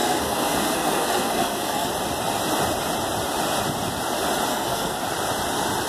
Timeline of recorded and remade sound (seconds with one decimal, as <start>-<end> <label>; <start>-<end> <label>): 0.0-1.9 remade; 1.9-4.5 recorded; 4.5-5.0 remade; 5.0-5.9 recorded